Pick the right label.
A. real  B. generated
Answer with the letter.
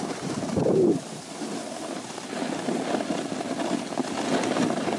A